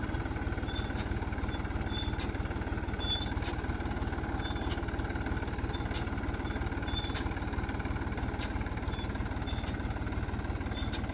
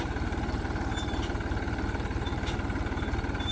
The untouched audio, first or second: first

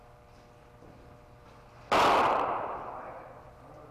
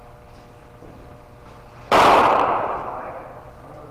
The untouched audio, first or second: first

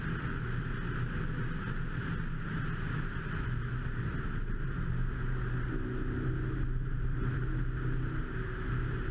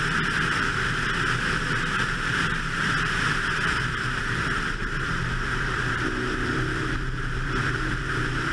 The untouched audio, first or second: first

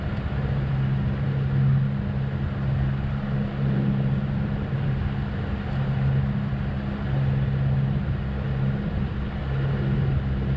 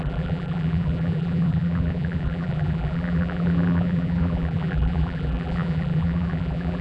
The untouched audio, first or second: first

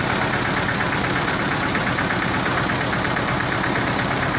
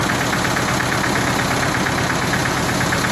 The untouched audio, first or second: second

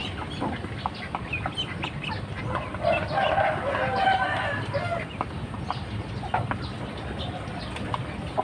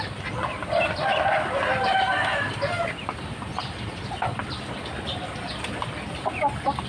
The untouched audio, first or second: first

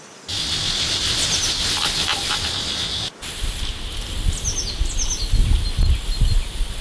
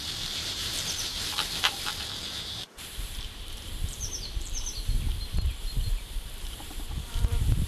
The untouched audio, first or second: first